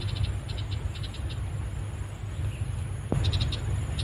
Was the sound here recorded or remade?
recorded